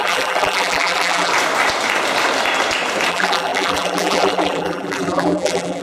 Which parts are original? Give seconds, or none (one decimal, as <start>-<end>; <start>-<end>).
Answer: 1.3-3.1